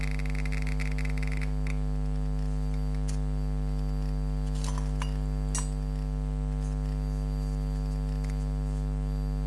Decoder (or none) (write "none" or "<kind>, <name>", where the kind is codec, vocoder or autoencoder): none